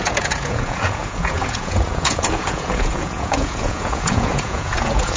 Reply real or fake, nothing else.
fake